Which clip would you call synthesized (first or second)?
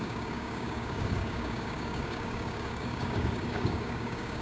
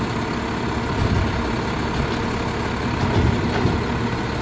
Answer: first